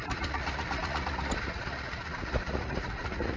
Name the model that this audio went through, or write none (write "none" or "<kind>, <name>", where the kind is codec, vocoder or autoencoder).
vocoder, Vocos